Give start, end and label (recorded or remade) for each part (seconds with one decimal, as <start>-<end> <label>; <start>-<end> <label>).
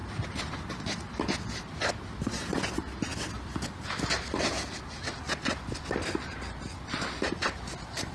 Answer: 0.0-8.1 recorded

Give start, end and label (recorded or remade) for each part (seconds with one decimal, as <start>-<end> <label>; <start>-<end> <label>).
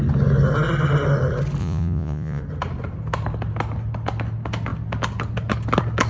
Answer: 0.0-1.6 recorded; 1.6-2.4 remade; 2.4-6.1 recorded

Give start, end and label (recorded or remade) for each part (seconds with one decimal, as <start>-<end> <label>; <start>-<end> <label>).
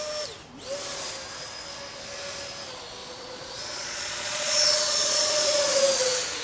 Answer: 0.0-3.0 recorded; 3.0-5.8 remade; 5.8-6.4 recorded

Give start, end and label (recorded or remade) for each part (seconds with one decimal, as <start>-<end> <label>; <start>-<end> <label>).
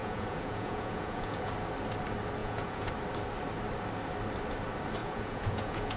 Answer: 0.0-1.5 remade; 1.5-2.4 recorded; 2.4-2.9 remade; 2.9-5.0 recorded; 5.0-6.0 remade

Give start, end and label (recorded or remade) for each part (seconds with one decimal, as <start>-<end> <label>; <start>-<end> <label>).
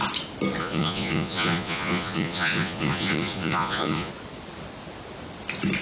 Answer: 0.0-0.6 recorded; 0.6-4.1 remade; 4.1-5.8 recorded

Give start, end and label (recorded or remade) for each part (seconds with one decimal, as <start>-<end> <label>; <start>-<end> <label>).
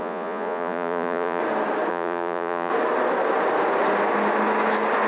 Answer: 0.0-1.4 remade; 1.4-1.9 recorded; 1.9-2.7 remade; 2.7-5.1 recorded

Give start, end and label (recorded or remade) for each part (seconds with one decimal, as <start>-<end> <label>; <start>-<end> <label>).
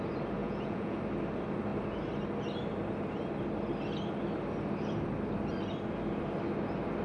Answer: 0.0-0.4 recorded; 0.4-1.0 remade; 1.0-7.0 recorded